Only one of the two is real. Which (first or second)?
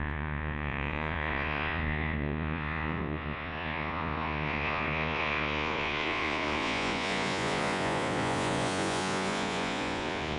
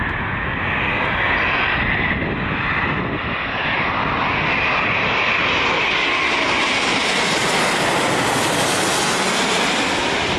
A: second